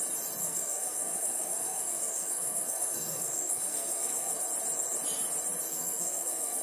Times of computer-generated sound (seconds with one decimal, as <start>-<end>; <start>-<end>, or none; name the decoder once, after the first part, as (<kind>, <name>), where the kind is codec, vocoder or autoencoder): 0.4-4.4 (codec, SNAC); 5.7-6.6